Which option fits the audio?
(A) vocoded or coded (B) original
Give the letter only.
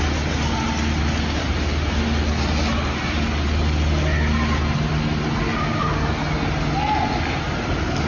B